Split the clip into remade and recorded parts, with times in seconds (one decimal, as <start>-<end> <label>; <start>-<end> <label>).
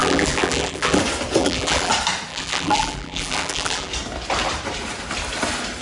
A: 0.0-1.0 remade; 1.0-1.4 recorded; 1.4-1.9 remade; 1.9-2.3 recorded; 2.3-3.9 remade; 3.9-5.8 recorded